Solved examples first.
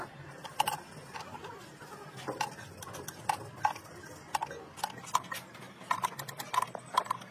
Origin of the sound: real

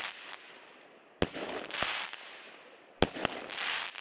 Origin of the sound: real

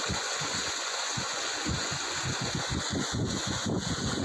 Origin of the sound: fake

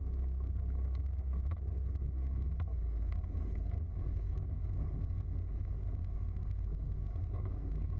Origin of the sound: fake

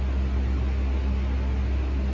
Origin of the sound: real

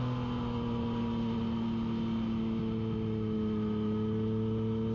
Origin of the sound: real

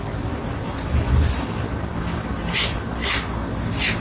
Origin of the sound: real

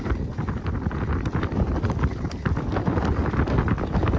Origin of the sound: real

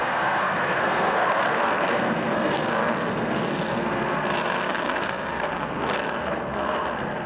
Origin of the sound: fake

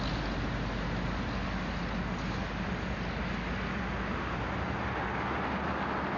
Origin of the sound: real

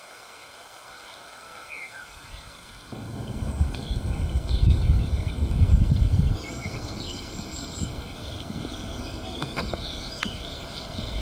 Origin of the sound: fake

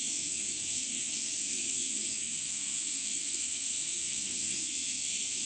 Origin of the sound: fake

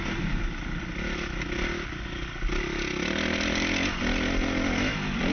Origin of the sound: real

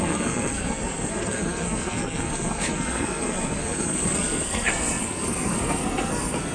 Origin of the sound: fake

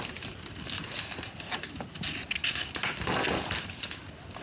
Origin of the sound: real